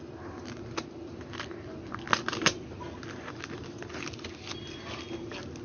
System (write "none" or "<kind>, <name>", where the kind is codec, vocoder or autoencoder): none